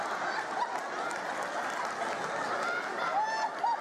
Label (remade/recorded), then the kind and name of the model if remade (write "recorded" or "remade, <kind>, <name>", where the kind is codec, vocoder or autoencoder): recorded